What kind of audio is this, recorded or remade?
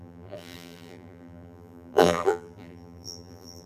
remade